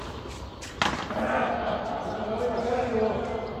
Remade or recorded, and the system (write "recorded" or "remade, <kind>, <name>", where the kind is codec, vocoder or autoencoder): recorded